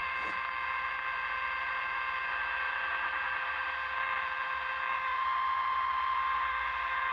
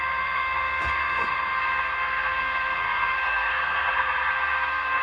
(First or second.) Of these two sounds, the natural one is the first